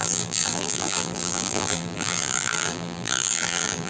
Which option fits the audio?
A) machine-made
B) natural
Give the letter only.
A